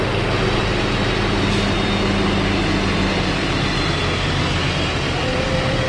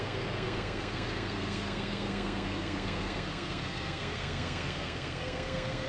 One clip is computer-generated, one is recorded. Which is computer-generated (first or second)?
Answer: second